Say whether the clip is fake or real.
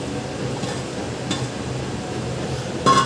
real